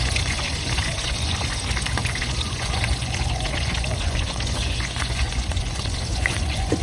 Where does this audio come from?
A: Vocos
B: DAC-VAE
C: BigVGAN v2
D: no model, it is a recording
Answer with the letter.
A